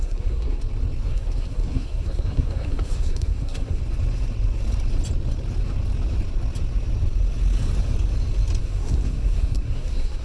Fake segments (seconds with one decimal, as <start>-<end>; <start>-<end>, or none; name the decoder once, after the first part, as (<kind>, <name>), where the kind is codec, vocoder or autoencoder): 0.0-0.6 (codec, SNAC); 1.1-3.8; 8.6-10.2

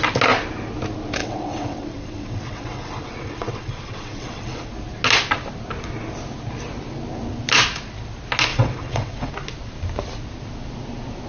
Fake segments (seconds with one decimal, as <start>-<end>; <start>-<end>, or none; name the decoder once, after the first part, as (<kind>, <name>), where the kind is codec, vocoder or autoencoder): 1.2-4.7 (vocoder, WaveNeXt); 8.5-9.3